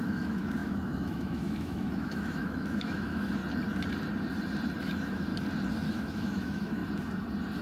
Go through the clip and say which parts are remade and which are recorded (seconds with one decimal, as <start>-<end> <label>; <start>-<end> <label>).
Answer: 0.0-3.4 remade; 3.4-4.8 recorded; 4.8-5.3 remade; 5.3-5.9 recorded; 5.9-6.8 remade; 6.8-7.6 recorded